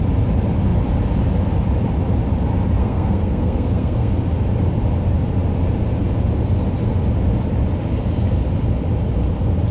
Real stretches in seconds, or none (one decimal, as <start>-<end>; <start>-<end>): 0.0-2.8; 4.1-9.7